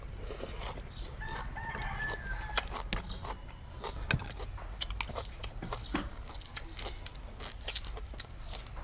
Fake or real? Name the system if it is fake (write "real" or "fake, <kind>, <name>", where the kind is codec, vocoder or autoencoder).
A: real